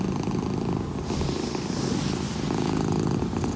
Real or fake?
real